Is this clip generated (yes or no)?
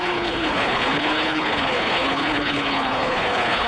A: yes